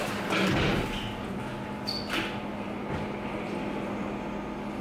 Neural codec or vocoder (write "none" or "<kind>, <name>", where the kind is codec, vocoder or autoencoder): none